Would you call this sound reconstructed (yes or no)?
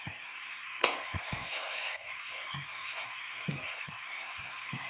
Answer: yes